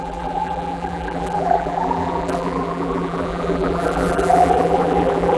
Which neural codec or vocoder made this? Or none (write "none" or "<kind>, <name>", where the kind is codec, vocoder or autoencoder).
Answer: vocoder, BigVGAN v2